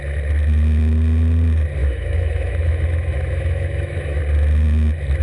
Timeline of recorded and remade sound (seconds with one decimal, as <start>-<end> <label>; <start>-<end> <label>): 0.0-1.8 recorded; 1.8-4.2 remade; 4.2-5.2 recorded